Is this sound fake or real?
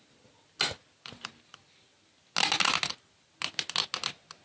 real